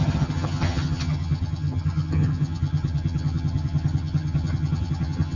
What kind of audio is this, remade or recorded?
remade